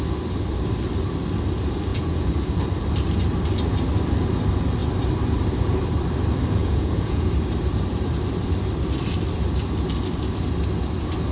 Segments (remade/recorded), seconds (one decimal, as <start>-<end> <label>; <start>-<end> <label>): 0.0-1.9 recorded; 1.9-2.5 remade; 2.5-6.6 recorded; 6.6-7.3 remade; 7.3-11.3 recorded

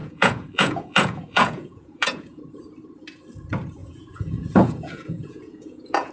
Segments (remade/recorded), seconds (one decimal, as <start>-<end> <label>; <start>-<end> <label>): 0.0-2.4 remade; 2.4-3.8 recorded; 3.8-6.1 remade

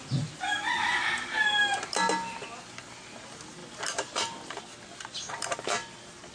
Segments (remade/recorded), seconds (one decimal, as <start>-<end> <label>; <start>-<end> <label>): 0.0-6.3 recorded

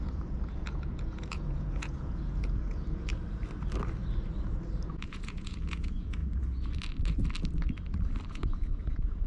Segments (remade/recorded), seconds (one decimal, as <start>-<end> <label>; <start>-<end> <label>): 0.0-3.1 remade; 3.1-4.9 recorded; 4.9-6.2 remade; 6.2-8.3 recorded; 8.3-9.3 remade

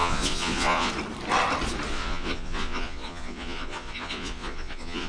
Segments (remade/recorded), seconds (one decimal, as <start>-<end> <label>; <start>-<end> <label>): 0.0-0.9 remade; 0.9-1.9 recorded; 1.9-5.1 remade

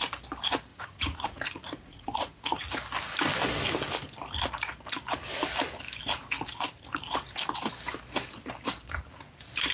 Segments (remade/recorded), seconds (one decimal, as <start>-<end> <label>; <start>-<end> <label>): 0.0-0.7 recorded; 0.7-2.6 remade; 2.6-9.7 recorded